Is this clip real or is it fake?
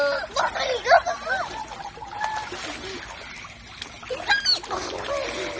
real